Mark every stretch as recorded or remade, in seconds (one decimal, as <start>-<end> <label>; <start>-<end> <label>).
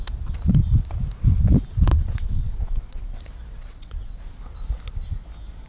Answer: 0.0-1.9 recorded; 1.9-3.2 remade; 3.2-3.6 recorded; 3.6-4.2 remade; 4.2-5.7 recorded